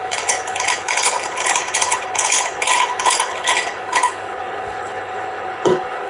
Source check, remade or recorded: remade